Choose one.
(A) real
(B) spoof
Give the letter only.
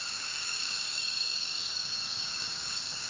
B